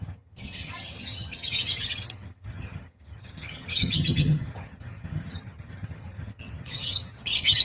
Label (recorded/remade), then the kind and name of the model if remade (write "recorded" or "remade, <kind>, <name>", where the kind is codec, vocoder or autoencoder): remade, vocoder, HiFi-GAN